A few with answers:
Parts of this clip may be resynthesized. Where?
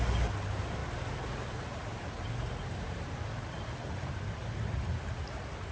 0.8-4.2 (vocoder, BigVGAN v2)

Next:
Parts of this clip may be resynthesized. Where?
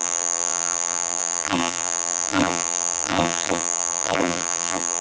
0.0-5.0 (vocoder, BigVGAN v2)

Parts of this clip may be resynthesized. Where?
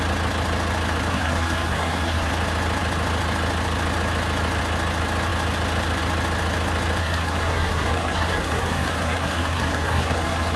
1.1-2.3 (codec, SNAC); 7.0-10.6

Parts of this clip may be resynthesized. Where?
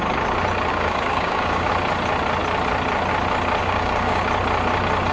0.7-1.7 (codec, DAC); 3.6-4.2